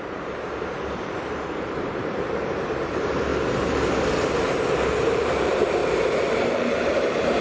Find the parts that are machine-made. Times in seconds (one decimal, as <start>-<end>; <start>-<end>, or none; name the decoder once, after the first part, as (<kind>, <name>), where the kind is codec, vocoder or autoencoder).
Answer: 0.0-3.3 (vocoder, BigVGAN v2); 4.7-5.8; 6.4-7.4